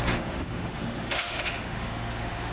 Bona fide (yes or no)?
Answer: no